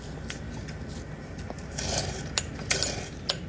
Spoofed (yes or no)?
no